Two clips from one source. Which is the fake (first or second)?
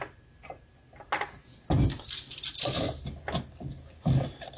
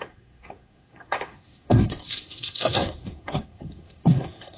second